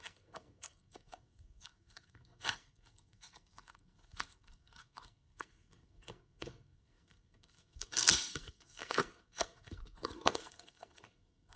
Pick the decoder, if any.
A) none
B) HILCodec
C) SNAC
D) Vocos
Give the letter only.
C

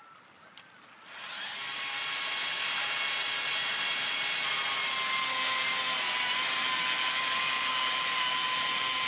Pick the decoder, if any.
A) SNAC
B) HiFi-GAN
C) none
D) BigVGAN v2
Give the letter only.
C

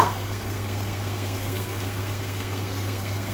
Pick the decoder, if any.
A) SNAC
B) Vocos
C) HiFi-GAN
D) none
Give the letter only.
A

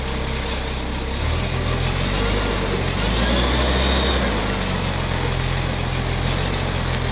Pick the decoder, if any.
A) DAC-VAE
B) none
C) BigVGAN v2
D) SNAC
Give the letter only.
B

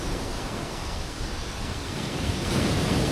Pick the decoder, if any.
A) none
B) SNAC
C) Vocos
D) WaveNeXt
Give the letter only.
B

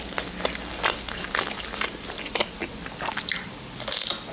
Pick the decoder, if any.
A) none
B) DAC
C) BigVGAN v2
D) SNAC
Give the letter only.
A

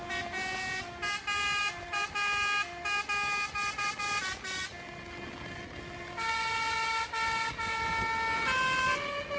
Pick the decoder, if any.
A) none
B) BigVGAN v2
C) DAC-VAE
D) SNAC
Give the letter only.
A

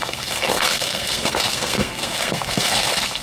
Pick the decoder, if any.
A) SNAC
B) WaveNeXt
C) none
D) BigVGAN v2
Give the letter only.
A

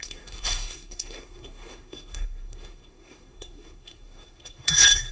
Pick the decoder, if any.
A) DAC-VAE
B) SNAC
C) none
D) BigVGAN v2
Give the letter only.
B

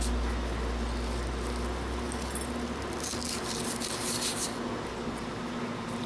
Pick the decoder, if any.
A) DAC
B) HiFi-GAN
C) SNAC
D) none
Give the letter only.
D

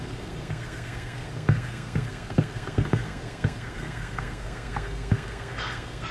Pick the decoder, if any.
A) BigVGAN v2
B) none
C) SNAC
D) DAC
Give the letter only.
C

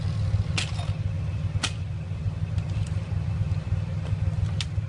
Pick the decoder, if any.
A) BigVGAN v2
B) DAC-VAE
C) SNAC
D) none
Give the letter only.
D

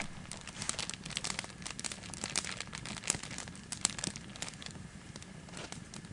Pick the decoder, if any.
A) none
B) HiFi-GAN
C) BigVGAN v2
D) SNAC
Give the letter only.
A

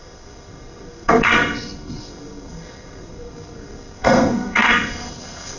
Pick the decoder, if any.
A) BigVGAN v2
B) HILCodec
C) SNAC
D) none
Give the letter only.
C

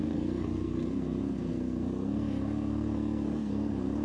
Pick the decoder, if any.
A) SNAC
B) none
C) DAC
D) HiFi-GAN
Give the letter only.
A